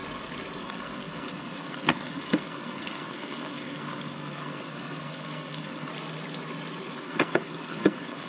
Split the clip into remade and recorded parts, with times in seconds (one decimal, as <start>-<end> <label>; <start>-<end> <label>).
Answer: 0.0-0.6 recorded; 0.6-5.9 remade; 5.9-7.0 recorded; 7.0-8.3 remade